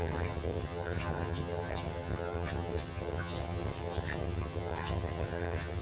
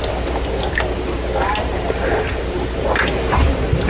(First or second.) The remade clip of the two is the first